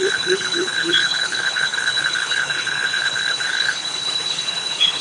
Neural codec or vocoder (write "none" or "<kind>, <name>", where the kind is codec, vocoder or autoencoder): codec, HILCodec